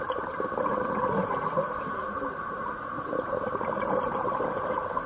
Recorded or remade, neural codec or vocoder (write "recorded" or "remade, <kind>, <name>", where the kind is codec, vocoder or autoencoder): recorded